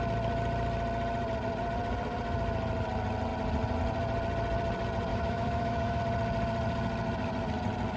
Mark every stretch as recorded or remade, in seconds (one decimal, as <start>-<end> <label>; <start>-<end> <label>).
0.0-5.1 recorded; 5.1-6.0 remade; 6.0-8.0 recorded